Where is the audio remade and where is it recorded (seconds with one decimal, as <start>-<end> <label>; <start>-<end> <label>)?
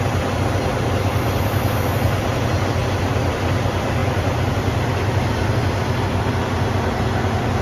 0.0-7.6 recorded